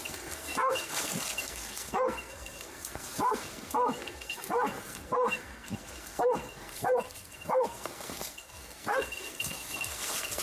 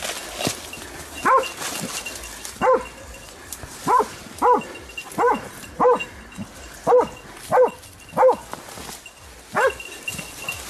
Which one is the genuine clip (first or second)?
second